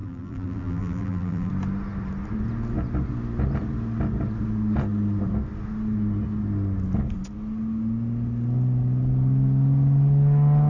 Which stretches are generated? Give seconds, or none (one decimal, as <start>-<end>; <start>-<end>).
0.0-1.5